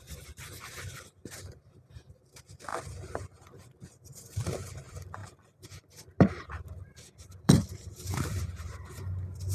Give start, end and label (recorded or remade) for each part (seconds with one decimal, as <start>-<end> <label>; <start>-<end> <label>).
0.0-2.7 remade; 2.7-4.1 recorded; 4.1-9.5 remade